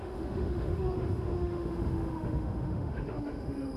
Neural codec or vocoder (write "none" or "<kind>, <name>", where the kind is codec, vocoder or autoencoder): autoencoder, DAC-VAE